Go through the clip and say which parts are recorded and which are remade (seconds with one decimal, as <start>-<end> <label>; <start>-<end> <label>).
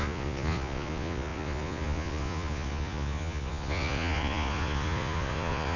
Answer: 0.0-5.8 remade